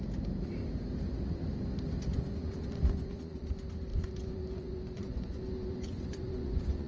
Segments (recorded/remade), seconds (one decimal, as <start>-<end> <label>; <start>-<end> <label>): 0.0-2.1 recorded; 2.1-3.5 remade; 3.5-3.9 recorded; 3.9-6.9 remade